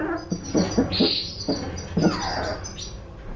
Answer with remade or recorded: recorded